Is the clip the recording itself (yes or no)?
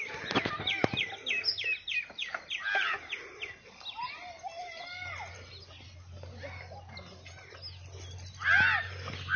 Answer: yes